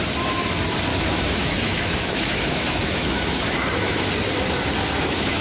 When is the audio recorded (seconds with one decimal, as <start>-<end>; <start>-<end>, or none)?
0.0-0.9; 4.1-4.8